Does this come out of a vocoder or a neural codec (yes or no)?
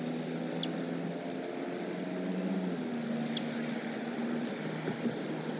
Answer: no